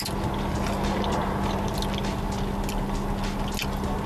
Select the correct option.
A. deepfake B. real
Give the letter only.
B